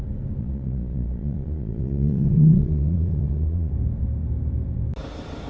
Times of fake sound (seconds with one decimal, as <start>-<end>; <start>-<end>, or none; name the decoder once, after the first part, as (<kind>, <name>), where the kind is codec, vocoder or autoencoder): 0.4-3.7 (vocoder, Vocos)